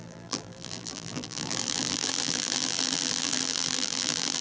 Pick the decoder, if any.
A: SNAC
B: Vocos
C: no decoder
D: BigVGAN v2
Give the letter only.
D